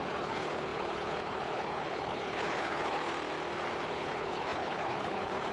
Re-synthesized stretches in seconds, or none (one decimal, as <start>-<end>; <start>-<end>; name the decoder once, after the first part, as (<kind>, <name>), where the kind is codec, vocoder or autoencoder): 0.0-3.1 (codec, HILCodec); 3.9-5.5